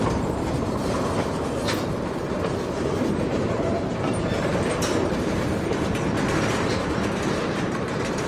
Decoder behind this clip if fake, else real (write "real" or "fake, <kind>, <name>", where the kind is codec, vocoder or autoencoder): fake, vocoder, BigVGAN v2